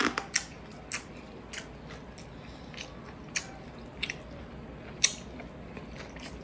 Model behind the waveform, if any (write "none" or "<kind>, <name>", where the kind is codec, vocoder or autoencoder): none